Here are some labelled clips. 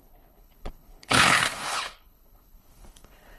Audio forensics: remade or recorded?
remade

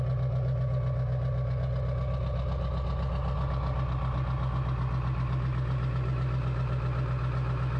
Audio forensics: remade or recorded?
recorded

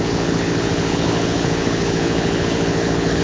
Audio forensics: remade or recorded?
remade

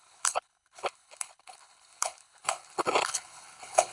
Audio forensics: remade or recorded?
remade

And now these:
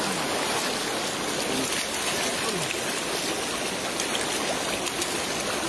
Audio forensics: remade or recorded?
recorded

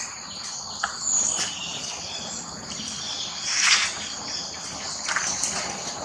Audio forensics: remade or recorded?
recorded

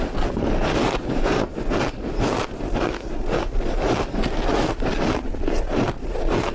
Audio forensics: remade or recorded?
recorded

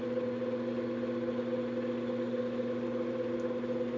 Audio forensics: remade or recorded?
recorded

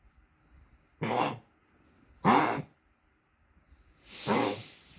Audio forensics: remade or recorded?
recorded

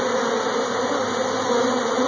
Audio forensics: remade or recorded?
recorded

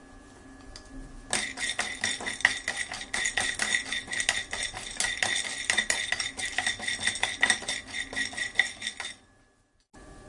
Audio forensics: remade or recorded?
recorded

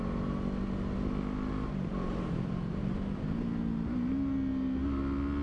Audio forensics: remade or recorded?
recorded